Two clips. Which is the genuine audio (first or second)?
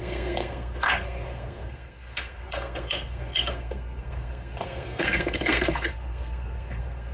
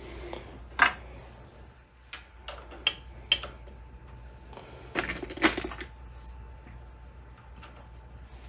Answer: second